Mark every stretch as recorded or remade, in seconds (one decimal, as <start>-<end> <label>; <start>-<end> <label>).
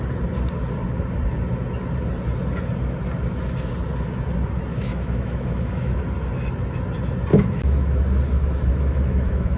0.0-4.7 recorded; 4.7-6.0 remade; 6.0-7.3 recorded; 7.3-8.0 remade; 8.0-8.7 recorded; 8.7-9.6 remade